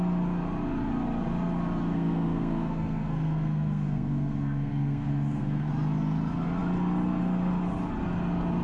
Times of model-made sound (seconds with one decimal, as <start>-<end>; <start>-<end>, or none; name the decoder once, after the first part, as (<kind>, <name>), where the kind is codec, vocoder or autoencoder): 1.8-5.7 (codec, SNAC)